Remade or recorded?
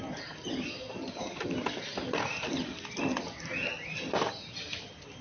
recorded